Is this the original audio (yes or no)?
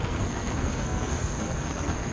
no